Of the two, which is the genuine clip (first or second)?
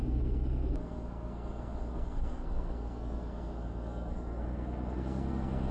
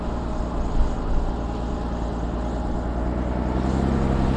second